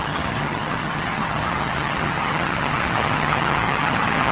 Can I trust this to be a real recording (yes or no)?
no